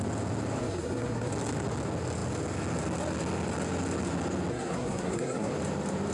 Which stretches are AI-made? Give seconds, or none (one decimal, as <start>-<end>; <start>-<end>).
0.6-1.3; 4.5-5.5